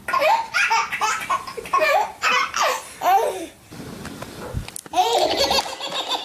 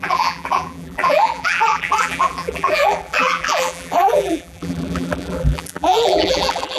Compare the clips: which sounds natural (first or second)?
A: first